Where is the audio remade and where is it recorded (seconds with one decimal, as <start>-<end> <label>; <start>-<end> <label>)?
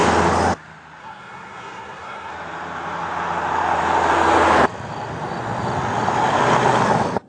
0.0-1.0 recorded; 1.0-2.3 remade; 2.3-7.3 recorded